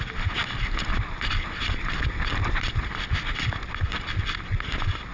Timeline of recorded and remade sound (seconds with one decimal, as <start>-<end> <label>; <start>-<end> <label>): 0.0-5.1 recorded